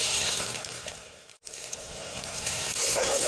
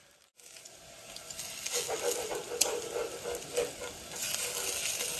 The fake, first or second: first